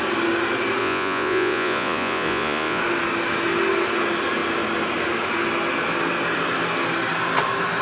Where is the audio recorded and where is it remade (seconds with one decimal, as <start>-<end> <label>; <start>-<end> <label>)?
0.0-0.8 recorded; 0.8-2.8 remade; 2.8-7.8 recorded